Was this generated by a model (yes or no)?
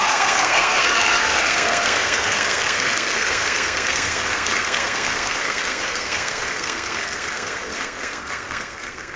yes